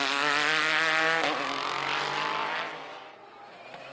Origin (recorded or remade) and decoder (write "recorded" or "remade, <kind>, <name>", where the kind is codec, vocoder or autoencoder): recorded